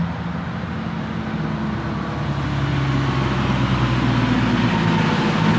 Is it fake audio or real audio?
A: real